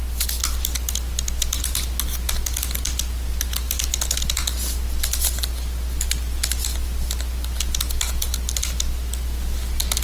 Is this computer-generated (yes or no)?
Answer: no